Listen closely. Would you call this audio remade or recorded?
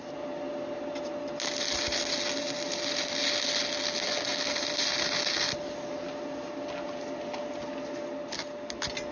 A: recorded